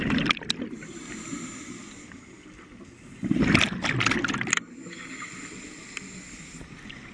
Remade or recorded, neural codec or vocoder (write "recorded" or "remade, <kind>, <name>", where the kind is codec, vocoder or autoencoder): recorded